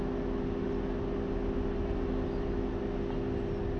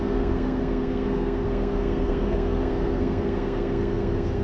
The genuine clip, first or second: first